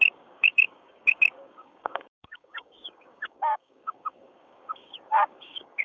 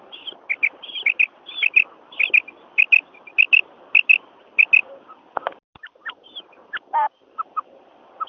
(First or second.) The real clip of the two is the second